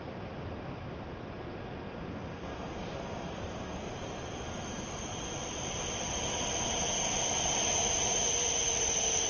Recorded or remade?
recorded